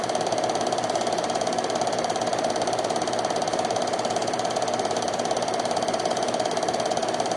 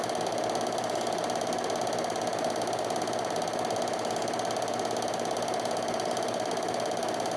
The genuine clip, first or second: second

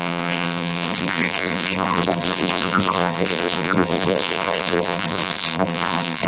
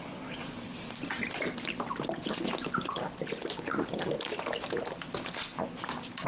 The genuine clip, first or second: second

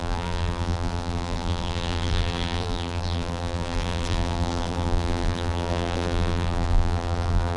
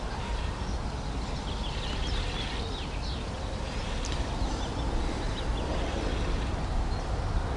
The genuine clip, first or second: second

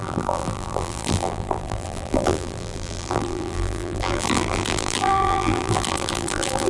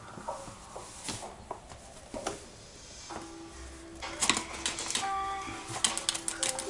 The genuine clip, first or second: second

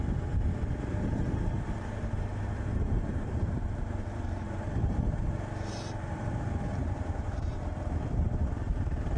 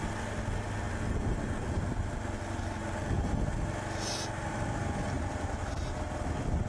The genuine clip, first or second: second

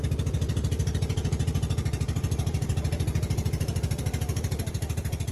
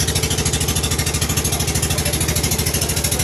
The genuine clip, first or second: second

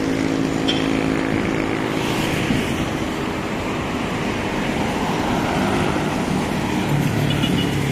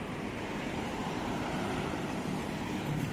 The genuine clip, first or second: first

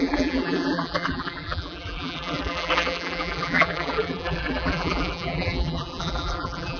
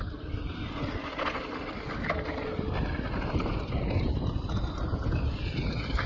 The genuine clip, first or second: second